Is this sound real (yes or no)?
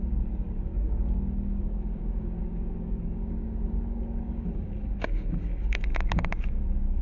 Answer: no